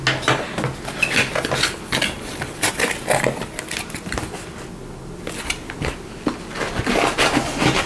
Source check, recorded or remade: recorded